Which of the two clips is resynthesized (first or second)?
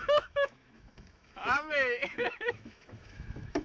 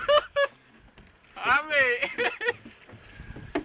first